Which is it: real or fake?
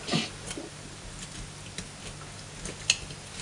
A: real